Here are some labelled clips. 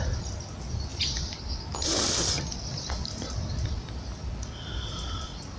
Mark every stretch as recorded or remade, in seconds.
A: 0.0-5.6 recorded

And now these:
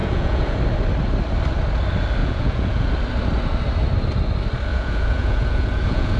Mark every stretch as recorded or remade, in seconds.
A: 0.0-0.6 remade; 0.6-2.2 recorded; 2.2-2.9 remade; 2.9-4.7 recorded; 4.7-6.2 remade

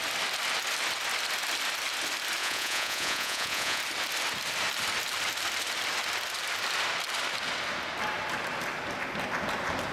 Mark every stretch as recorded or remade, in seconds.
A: 0.0-2.4 recorded; 2.4-3.8 remade; 3.8-9.9 recorded

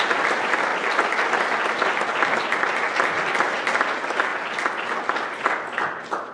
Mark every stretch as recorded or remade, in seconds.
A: 0.0-6.3 recorded

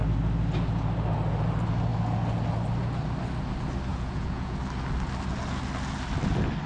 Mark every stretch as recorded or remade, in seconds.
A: 0.0-3.9 recorded; 3.9-4.6 remade; 4.6-6.7 recorded

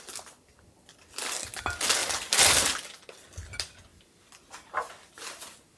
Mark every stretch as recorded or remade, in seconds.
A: 0.0-5.8 recorded

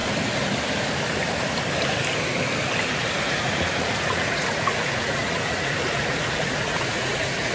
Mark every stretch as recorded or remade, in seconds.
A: 0.0-3.2 recorded; 3.2-7.5 remade